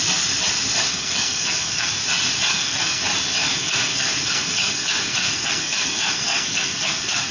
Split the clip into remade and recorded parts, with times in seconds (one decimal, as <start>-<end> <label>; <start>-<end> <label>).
0.0-0.9 recorded; 0.9-1.9 remade; 1.9-2.5 recorded; 2.5-3.0 remade; 3.0-3.4 recorded; 3.4-7.3 remade